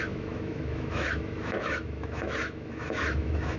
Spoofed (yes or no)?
yes